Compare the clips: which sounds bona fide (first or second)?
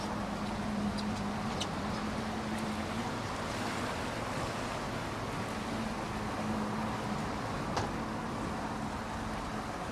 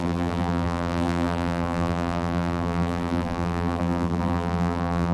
first